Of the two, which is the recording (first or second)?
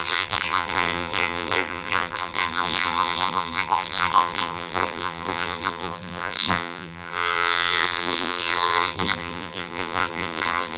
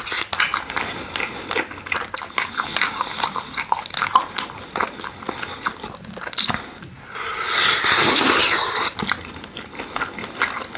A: second